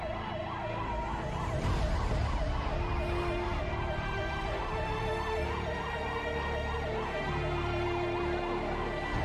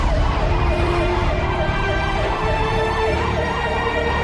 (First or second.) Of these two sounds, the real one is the first